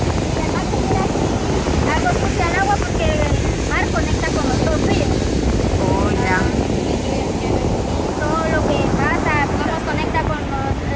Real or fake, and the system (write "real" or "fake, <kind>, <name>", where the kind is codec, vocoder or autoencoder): real